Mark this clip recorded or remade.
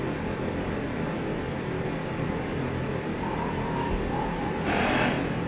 recorded